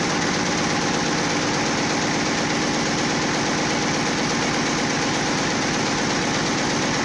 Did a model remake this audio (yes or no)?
no